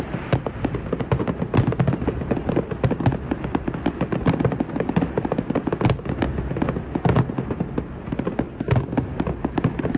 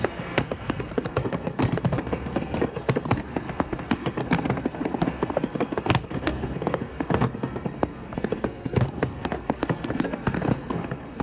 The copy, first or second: second